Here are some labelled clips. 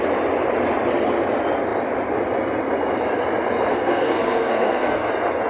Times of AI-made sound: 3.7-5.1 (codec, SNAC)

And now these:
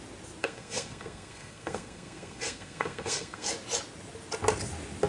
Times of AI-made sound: 0.4-3.5 (codec, SNAC)

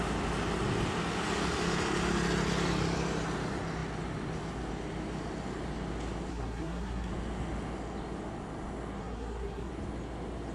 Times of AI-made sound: 6.3-7.1 (codec, SNAC); 9.0-9.7

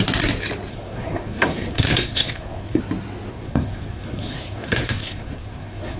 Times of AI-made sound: 0.7-2.8 (codec, SNAC); 3.3-6.0

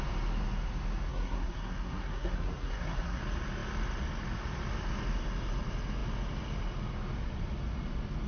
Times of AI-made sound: 1.1-3.2 (codec, SNAC)

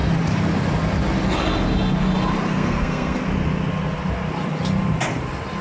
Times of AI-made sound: 2.5-3.2 (codec, SNAC)

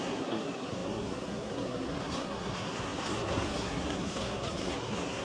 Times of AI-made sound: 0.0-5.2 (codec, SNAC)